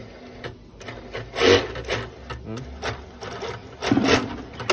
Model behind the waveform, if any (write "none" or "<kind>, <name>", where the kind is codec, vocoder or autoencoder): none